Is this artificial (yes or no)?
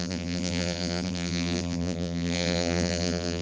yes